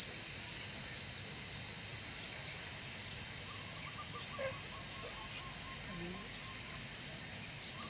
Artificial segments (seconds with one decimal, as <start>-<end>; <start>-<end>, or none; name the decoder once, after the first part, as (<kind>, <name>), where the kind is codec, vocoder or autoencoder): none